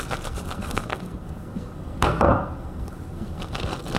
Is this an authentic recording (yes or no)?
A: no